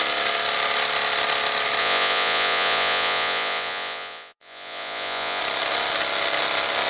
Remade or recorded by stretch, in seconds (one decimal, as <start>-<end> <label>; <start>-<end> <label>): 0.0-1.8 recorded; 1.8-5.4 remade; 5.4-6.9 recorded